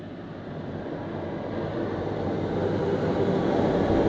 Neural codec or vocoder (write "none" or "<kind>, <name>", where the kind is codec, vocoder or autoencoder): none